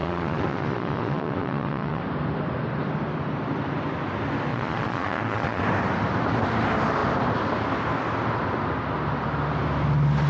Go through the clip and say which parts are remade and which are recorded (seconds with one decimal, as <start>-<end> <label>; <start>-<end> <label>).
0.0-2.0 remade; 2.0-4.5 recorded; 4.5-5.6 remade; 5.6-10.3 recorded